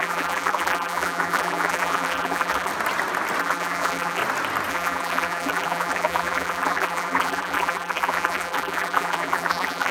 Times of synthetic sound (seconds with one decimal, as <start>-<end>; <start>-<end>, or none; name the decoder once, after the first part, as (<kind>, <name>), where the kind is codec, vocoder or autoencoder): 0.0-2.7 (vocoder, BigVGAN v2); 3.4-4.2; 4.7-9.9